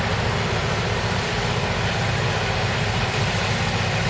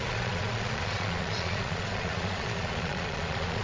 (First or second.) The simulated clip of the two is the second